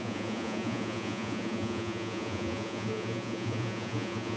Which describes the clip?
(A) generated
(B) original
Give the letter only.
A